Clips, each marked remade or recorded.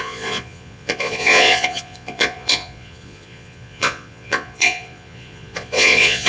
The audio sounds remade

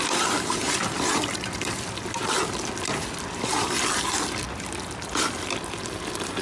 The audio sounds recorded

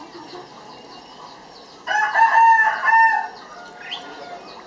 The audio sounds recorded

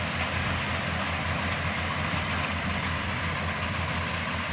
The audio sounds recorded